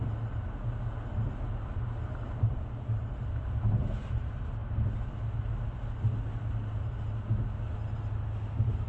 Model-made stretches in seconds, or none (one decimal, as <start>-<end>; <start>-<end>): none